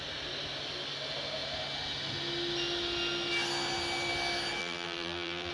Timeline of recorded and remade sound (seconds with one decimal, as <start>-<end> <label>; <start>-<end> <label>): 0.0-4.6 recorded; 4.6-5.5 remade